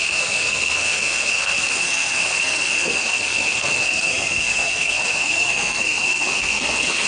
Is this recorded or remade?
remade